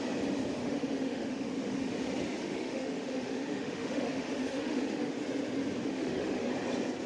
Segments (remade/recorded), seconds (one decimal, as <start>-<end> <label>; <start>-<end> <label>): 0.0-0.6 recorded; 0.6-1.9 remade; 1.9-2.4 recorded; 2.4-5.1 remade; 5.1-5.8 recorded; 5.8-6.5 remade; 6.5-7.1 recorded